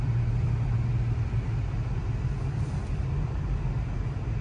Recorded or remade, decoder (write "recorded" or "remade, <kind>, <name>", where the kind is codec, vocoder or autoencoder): recorded